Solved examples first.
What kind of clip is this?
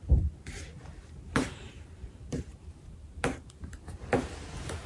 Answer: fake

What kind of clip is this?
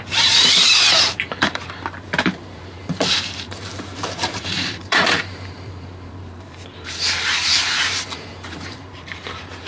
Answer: fake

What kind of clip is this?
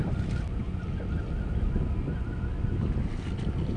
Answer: real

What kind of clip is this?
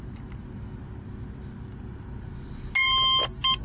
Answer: real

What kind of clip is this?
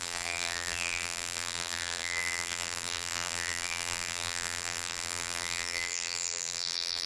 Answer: fake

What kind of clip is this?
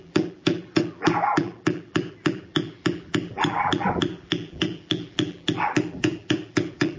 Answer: fake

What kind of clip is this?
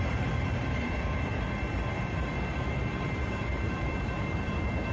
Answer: fake